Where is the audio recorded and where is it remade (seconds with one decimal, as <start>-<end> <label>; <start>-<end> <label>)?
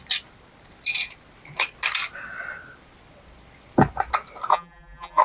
0.0-4.5 recorded; 4.5-5.2 remade